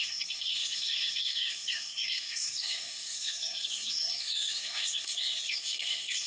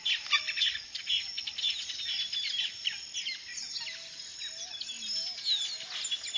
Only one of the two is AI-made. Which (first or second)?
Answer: first